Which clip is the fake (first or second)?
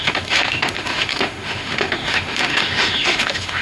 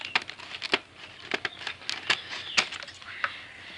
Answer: first